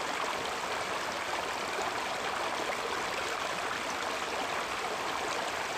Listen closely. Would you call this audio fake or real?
real